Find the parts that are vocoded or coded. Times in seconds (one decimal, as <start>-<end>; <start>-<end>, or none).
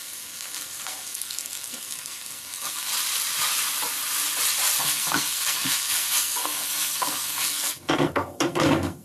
0.0-2.9; 4.8-9.0